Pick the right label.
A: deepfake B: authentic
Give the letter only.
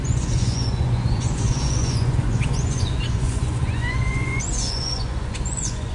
A